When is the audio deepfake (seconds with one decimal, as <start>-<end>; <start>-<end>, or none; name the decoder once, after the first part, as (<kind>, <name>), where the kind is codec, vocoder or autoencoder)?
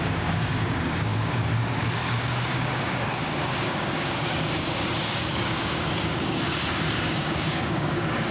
0.0-8.3 (codec, DAC)